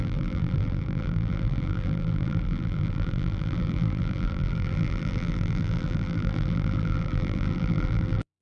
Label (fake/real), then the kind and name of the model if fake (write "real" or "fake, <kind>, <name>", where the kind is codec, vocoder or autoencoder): fake, vocoder, BigVGAN v2